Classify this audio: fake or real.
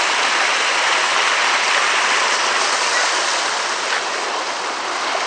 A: real